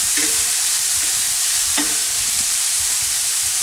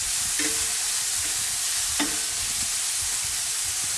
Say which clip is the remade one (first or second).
first